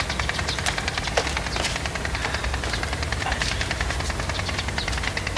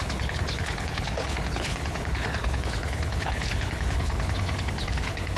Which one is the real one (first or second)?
first